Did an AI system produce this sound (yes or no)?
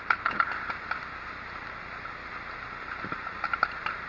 no